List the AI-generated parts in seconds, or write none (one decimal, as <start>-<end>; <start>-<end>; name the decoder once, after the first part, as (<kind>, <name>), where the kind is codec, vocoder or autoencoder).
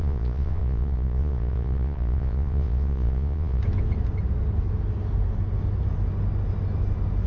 0.0-3.6 (vocoder, Vocos)